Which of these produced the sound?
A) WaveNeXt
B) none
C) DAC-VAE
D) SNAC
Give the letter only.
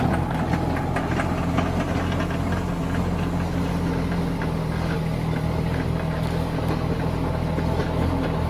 B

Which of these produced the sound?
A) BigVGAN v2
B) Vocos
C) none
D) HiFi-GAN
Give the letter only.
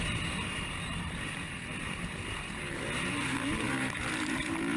A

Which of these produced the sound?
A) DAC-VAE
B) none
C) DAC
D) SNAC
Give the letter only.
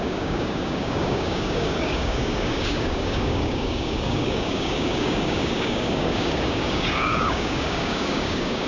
C